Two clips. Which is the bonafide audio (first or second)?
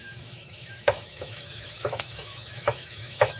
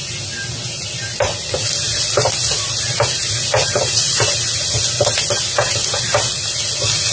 second